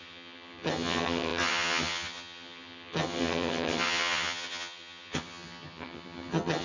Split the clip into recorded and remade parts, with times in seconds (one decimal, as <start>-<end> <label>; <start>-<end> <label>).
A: 0.0-6.6 remade

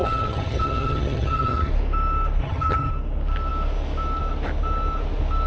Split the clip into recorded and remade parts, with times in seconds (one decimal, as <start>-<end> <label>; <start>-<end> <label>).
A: 0.0-1.7 remade; 1.7-2.4 recorded; 2.4-2.9 remade; 2.9-5.5 recorded

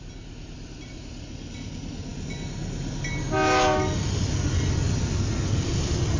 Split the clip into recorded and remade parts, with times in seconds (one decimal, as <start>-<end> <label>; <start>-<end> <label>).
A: 0.0-6.2 recorded

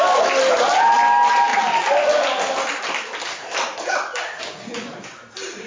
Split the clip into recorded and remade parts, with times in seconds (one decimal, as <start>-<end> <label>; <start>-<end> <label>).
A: 0.0-5.7 recorded

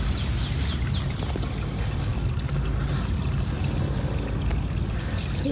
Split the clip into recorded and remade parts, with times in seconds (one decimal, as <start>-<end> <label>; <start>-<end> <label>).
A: 0.0-5.5 recorded

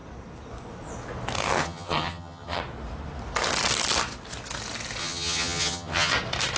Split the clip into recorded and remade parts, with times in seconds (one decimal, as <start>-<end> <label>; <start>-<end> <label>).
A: 0.0-1.6 recorded; 1.6-2.6 remade; 2.6-5.0 recorded; 5.0-6.1 remade; 6.1-6.6 recorded

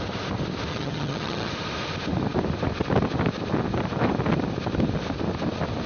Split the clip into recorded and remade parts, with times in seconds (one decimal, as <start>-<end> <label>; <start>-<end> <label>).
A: 0.0-0.7 recorded; 0.7-1.5 remade; 1.5-5.9 recorded

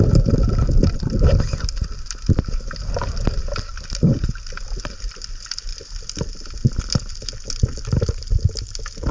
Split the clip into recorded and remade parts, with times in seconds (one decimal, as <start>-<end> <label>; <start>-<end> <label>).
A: 0.0-9.1 recorded